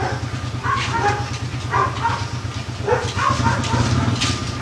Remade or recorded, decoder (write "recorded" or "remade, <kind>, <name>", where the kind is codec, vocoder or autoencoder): recorded